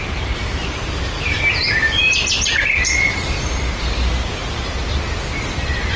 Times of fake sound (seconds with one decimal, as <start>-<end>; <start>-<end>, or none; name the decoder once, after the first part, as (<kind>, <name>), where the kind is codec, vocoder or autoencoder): 0.0-3.6 (vocoder, BigVGAN v2)

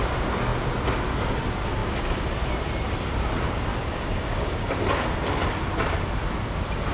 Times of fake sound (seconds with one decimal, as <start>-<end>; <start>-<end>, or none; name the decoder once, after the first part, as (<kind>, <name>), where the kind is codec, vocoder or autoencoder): 3.7-4.7 (codec, DAC)